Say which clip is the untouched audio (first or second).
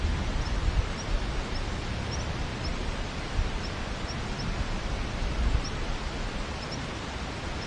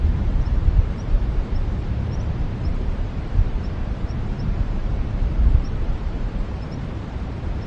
first